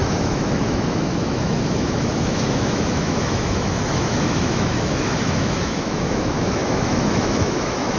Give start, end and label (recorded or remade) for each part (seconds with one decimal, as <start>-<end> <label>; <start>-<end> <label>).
0.0-8.0 remade